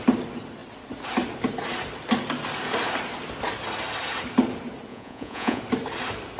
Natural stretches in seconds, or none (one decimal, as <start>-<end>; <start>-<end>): 0.0-4.9; 5.6-6.4